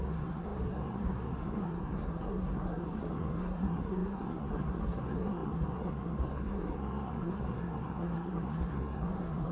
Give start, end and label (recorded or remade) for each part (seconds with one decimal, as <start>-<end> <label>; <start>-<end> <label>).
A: 0.0-9.5 remade